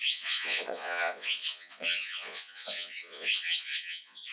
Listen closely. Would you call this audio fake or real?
fake